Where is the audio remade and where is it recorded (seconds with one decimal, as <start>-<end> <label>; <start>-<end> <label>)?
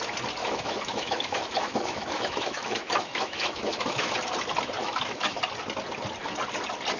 0.0-0.4 recorded; 0.4-4.1 remade; 4.1-4.8 recorded; 4.8-5.4 remade; 5.4-7.0 recorded